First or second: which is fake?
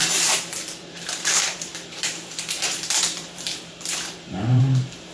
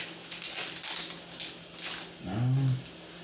first